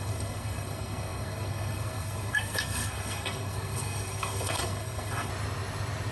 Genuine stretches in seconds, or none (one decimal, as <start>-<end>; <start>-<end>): 5.3-6.1